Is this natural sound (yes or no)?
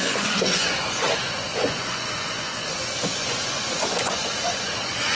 no